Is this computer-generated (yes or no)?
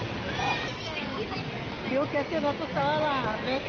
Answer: no